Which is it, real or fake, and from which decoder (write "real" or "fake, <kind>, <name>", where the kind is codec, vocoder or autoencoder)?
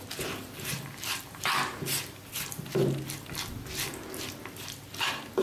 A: real